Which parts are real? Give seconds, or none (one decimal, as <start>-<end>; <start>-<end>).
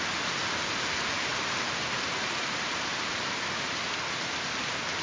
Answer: 0.0-1.3; 3.7-5.0